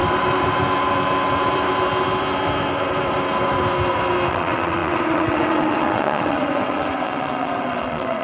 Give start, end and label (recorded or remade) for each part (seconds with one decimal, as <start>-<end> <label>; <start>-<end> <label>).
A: 0.0-4.3 recorded; 4.3-8.2 remade